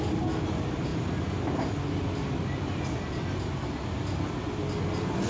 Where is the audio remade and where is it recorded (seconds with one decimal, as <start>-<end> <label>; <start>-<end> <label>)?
0.0-5.3 recorded